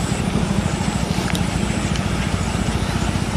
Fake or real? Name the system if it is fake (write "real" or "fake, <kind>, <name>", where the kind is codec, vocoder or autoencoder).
real